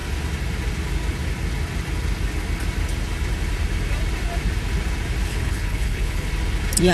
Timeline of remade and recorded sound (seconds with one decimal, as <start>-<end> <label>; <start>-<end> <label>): 0.0-5.3 recorded; 5.3-6.3 remade; 6.3-6.9 recorded